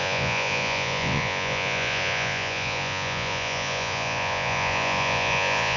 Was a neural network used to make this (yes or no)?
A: yes